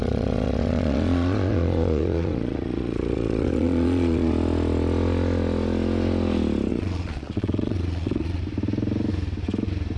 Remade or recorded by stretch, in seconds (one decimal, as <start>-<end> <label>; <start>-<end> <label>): 0.0-4.3 remade; 4.3-6.7 recorded; 6.7-8.4 remade; 8.4-10.0 recorded